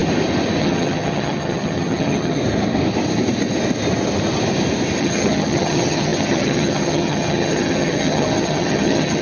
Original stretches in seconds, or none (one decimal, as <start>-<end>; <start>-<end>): 0.0-0.6; 2.4-5.0